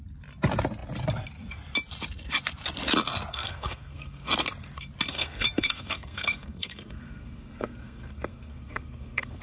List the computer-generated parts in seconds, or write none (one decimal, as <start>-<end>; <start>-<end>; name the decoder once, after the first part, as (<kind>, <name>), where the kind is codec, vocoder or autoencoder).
3.3-4.3 (codec, SNAC); 5.1-9.4